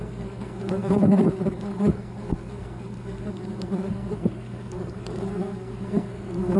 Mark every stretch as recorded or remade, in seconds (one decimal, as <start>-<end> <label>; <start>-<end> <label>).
0.0-6.6 remade